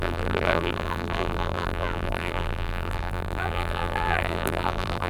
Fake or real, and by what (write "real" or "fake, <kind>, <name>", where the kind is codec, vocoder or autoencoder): fake, vocoder, BigVGAN v2